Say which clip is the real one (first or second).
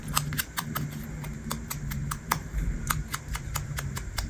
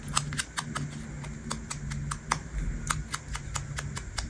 second